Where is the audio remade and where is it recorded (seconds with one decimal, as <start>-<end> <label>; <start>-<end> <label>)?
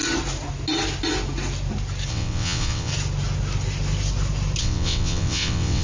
0.0-2.1 recorded; 2.1-2.9 remade; 2.9-4.6 recorded; 4.6-5.8 remade